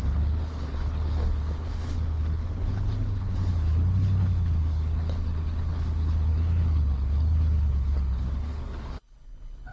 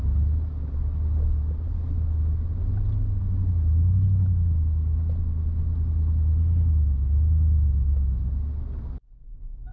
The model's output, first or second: first